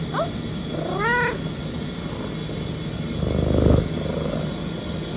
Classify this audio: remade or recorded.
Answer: recorded